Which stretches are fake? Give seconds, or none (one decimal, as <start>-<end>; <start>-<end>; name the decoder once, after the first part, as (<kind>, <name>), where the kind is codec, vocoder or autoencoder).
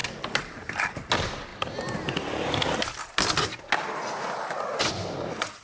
none